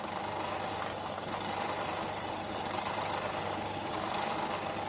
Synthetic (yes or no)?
no